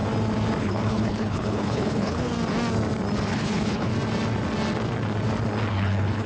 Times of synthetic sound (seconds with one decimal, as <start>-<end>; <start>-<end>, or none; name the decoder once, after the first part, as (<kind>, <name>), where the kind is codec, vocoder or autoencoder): 0.6-2.3 (codec, HILCodec); 3.3-3.9; 5.7-6.3